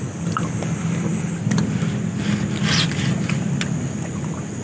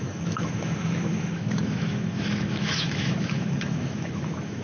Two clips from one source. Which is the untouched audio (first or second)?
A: first